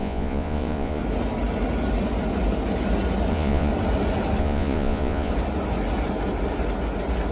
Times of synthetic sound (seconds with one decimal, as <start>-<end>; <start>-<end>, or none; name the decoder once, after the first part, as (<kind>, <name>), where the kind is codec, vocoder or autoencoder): 0.0-1.0 (vocoder, Vocos); 3.3-3.7; 4.4-5.3